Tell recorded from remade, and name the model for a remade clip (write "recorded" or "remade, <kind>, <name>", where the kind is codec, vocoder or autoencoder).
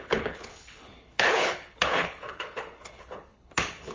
remade, codec, HILCodec